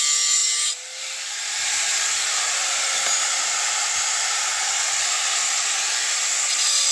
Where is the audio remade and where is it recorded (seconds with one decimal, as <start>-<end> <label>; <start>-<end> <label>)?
0.0-6.9 recorded